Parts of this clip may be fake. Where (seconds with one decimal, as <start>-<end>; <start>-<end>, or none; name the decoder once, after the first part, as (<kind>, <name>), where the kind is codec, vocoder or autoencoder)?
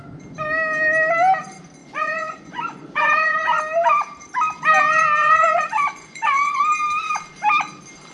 1.8-3.6 (vocoder, Vocos); 5.2-6.6